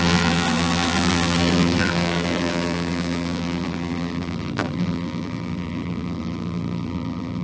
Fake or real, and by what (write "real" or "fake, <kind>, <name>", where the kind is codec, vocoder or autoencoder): fake, vocoder, BigVGAN v2